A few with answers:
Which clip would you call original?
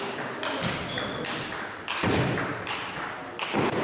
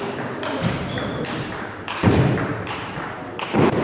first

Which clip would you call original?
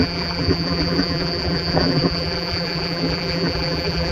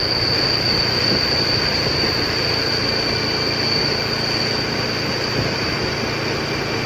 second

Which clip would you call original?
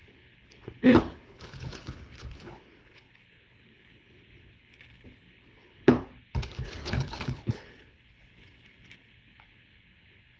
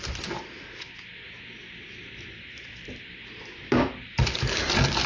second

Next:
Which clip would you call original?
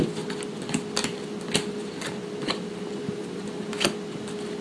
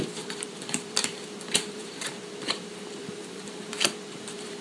first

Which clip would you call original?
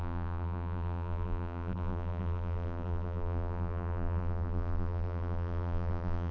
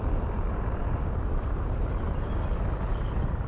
second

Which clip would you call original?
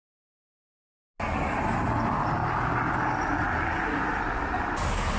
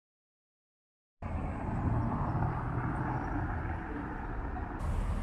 first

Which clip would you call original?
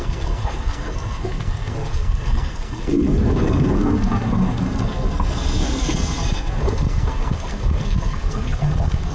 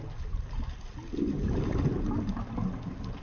second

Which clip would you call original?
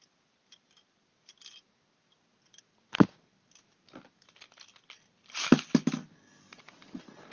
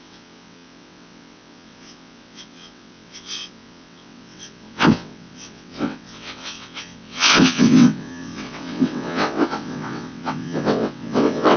first